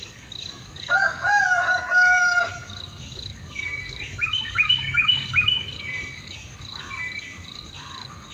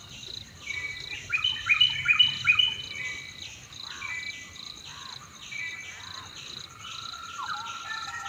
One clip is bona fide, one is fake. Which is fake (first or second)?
first